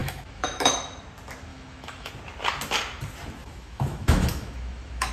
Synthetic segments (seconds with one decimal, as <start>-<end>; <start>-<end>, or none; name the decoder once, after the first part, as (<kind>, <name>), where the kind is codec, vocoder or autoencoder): 0.0-0.7 (autoencoder, DAC-VAE); 1.5-2.1; 3.4-5.1